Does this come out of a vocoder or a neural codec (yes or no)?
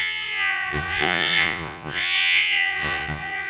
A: yes